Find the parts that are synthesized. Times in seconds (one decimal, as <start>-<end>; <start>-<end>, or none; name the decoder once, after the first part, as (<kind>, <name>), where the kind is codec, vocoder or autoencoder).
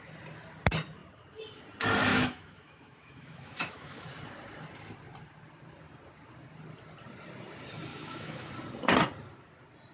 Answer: 2.1-4.1 (autoencoder, DAC-VAE); 7.9-8.5